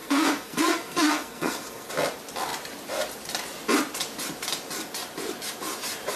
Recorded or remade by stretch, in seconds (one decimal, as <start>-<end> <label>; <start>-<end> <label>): 0.0-1.9 remade; 1.9-6.2 recorded